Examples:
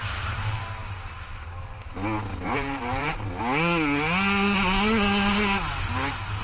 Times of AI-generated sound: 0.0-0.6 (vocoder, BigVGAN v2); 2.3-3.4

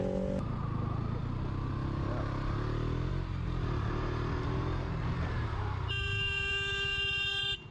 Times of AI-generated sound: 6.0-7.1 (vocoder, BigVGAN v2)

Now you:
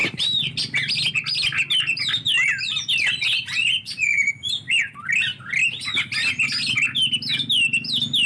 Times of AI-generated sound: 3.6-4.3 (vocoder, Vocos)